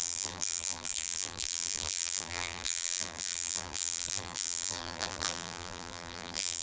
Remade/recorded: remade